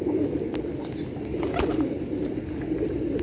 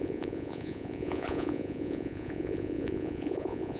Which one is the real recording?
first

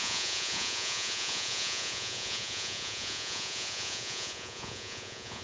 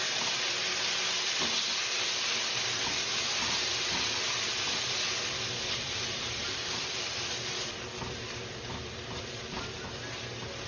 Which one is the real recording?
second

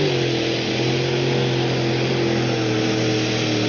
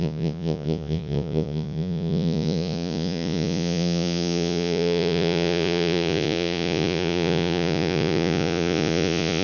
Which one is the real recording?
first